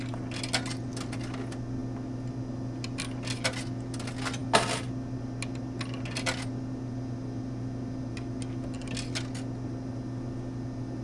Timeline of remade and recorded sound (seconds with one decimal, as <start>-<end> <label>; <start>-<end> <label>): 0.0-11.0 recorded